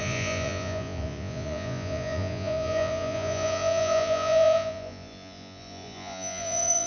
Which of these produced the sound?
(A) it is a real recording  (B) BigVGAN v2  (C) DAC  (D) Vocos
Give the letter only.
D